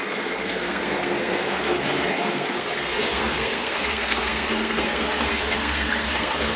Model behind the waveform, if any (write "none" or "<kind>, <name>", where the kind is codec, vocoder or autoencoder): codec, SNAC